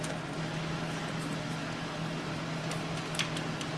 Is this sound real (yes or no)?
yes